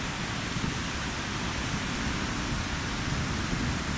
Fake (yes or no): no